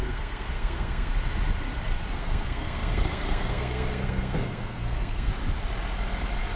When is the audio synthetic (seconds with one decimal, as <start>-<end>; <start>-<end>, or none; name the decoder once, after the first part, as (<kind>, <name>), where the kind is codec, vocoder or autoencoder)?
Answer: 0.0-1.1 (codec, SNAC); 2.1-5.3